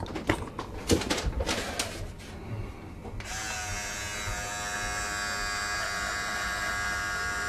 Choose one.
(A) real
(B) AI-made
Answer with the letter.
A